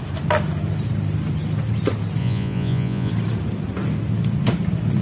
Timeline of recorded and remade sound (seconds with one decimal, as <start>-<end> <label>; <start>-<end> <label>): 0.0-2.2 recorded; 2.2-3.1 remade; 3.1-5.0 recorded